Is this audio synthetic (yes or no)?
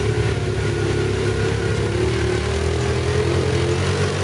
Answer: no